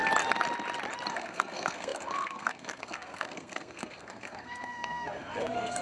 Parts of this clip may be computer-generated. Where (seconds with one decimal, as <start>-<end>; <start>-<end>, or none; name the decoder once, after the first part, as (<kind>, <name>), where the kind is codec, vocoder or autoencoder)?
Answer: 1.1-5.8 (codec, SNAC)